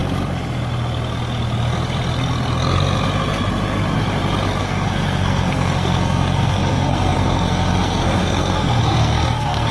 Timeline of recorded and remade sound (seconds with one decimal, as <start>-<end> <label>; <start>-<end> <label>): 0.0-4.6 recorded; 4.6-9.7 remade